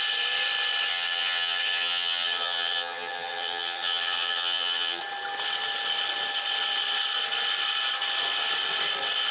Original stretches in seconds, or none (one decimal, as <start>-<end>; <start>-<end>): 0.0-0.9; 5.0-9.3